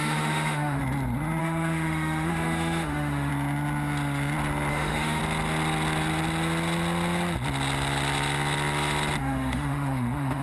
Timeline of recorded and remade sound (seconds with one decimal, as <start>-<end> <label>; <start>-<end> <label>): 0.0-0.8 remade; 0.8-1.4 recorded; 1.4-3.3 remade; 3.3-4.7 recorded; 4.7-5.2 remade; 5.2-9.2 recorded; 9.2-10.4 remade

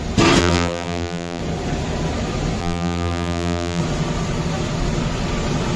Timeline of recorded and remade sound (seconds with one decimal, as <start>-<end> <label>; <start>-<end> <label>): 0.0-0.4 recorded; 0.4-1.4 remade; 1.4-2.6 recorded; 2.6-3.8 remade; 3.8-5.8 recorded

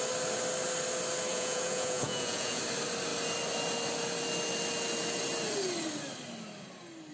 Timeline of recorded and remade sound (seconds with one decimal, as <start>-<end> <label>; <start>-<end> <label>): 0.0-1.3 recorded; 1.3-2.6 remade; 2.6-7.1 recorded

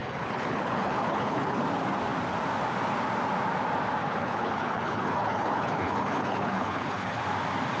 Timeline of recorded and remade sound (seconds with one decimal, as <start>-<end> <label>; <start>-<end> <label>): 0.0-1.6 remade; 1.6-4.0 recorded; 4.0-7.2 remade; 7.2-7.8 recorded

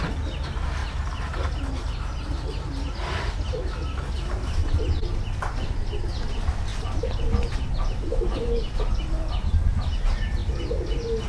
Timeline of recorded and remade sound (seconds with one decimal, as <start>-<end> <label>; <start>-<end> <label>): 0.0-8.1 recorded; 8.1-8.6 remade; 8.6-11.3 recorded

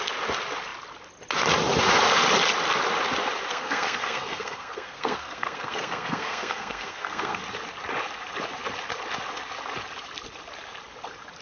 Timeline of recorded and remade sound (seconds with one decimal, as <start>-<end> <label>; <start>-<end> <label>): 0.0-3.5 recorded; 3.5-7.4 remade; 7.4-11.4 recorded

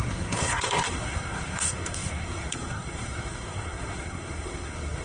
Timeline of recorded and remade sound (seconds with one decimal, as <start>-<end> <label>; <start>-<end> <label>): 0.0-5.0 remade